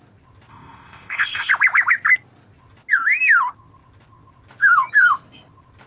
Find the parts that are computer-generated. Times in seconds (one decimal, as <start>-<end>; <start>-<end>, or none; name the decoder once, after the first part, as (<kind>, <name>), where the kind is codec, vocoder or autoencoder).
0.5-1.5 (codec, ZipCodec)